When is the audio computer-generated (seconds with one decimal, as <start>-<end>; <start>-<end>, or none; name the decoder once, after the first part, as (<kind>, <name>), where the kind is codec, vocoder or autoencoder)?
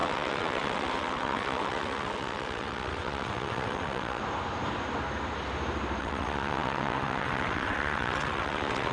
0.0-4.2 (vocoder, WaveNeXt); 6.0-8.9